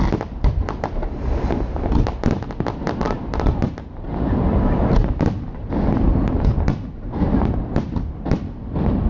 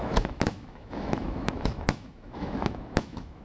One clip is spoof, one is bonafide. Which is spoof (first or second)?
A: second